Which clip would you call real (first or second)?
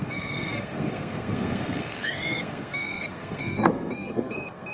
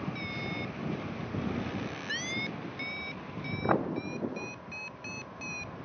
second